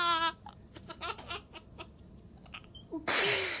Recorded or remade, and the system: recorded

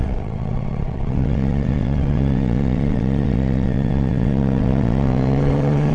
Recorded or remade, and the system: remade, vocoder, WaveNeXt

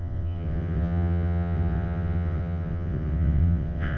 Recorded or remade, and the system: remade, vocoder, WaveNeXt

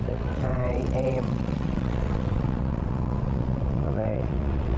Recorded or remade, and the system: remade, vocoder, WaveNeXt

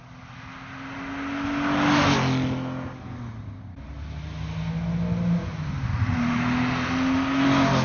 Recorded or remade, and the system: recorded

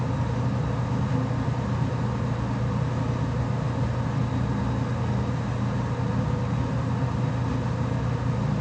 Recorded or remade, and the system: recorded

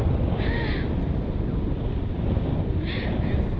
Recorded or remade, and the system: recorded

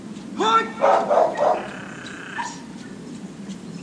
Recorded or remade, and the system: recorded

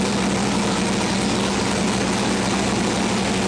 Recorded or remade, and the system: recorded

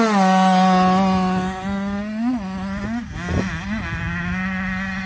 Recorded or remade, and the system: recorded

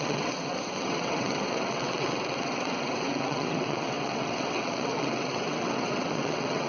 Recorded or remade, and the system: remade, vocoder, WaveNeXt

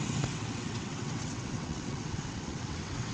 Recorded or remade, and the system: remade, vocoder, WaveNeXt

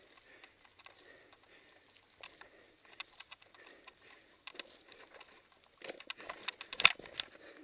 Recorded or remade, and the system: recorded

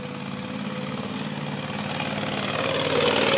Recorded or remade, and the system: recorded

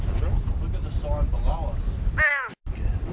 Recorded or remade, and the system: recorded